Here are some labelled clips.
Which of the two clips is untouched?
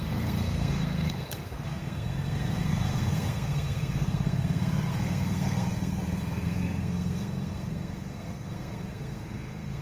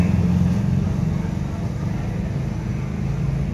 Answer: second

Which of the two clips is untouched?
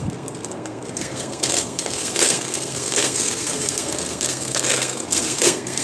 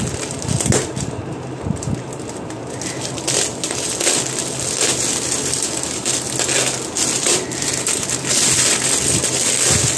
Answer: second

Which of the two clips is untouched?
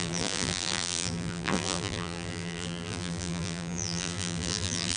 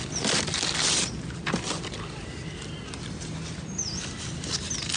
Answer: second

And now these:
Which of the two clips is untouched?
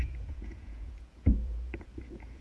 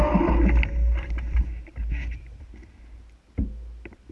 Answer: second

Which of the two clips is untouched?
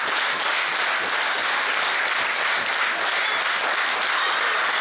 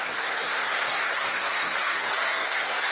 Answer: first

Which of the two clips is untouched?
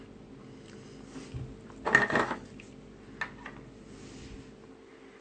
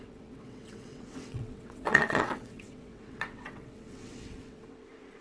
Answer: first